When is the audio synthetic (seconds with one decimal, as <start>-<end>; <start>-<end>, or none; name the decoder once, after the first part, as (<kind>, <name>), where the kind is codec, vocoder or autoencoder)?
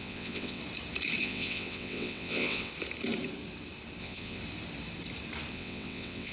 0.0-0.6 (vocoder, WaveNeXt); 1.2-2.7; 4.0-4.4; 5.5-6.3